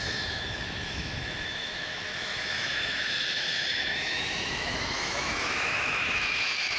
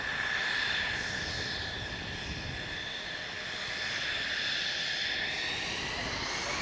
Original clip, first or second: second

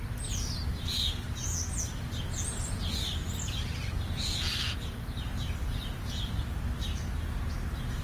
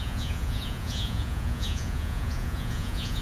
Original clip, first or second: first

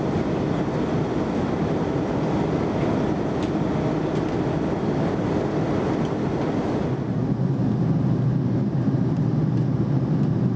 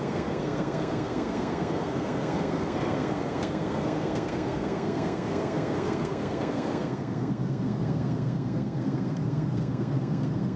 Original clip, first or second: first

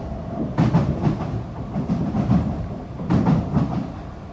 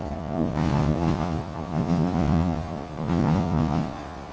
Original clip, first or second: first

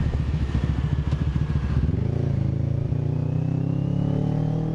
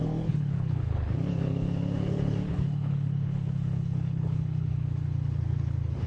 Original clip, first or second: first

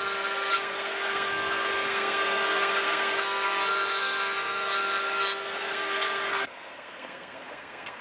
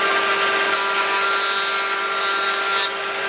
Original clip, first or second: second